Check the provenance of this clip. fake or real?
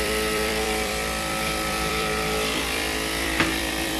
fake